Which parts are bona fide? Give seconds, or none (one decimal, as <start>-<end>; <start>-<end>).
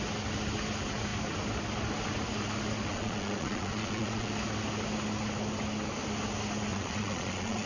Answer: 0.0-2.9; 4.3-6.7